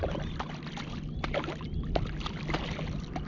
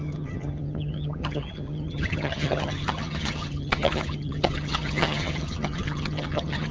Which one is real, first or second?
first